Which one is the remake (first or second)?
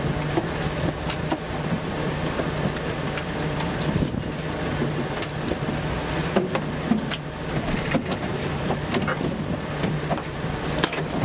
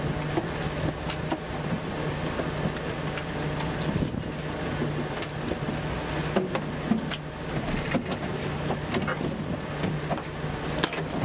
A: first